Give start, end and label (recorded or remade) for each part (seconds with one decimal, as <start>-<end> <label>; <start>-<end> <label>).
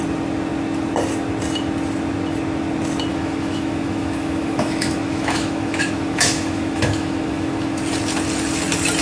0.0-3.1 recorded; 3.1-7.8 remade; 7.8-9.0 recorded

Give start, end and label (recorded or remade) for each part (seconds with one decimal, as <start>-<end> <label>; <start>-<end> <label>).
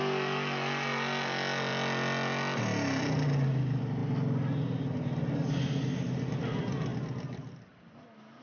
0.0-8.4 recorded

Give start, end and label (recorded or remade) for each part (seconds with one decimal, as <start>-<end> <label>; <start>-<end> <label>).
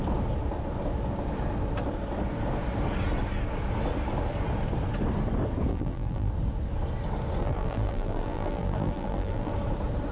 0.0-5.7 recorded; 5.7-6.3 remade; 6.3-7.4 recorded; 7.4-9.5 remade; 9.5-10.1 recorded